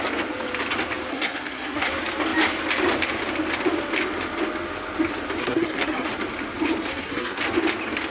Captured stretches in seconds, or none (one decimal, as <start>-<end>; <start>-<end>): 0.0-1.1; 1.9-5.4; 6.1-6.9; 7.4-8.1